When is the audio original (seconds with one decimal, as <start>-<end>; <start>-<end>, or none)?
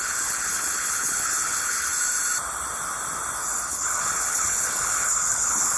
1.9-3.7